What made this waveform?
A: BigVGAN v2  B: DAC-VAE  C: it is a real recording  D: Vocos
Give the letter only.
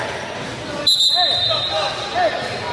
C